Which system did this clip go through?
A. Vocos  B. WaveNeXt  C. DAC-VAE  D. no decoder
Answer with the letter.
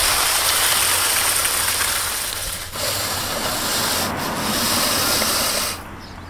D